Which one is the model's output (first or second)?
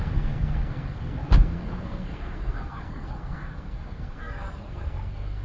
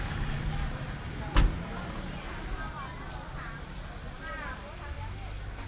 first